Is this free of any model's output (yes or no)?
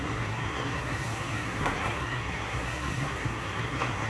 no